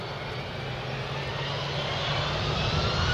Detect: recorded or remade recorded